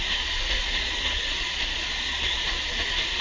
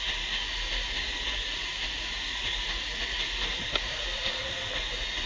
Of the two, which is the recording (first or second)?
second